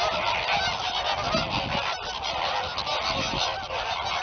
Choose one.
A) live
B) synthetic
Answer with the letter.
A